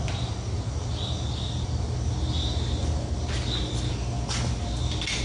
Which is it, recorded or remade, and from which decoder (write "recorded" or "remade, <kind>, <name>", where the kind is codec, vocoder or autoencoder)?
recorded